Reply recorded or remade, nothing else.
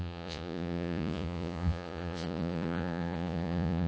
remade